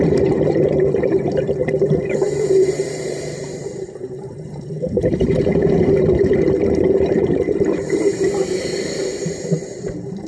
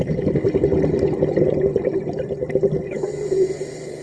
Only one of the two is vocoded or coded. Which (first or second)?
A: first